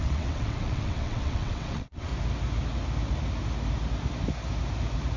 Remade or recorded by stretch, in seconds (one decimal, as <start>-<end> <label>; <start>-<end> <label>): 0.0-2.1 remade; 2.1-5.2 recorded